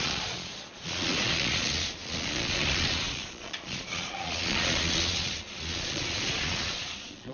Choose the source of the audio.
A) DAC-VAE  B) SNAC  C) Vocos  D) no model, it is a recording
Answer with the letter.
C